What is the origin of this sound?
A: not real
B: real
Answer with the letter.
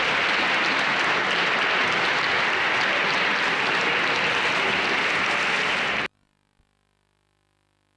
B